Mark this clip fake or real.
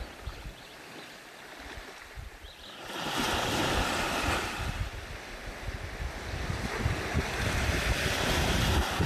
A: real